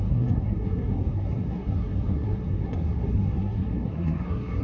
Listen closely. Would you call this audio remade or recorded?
remade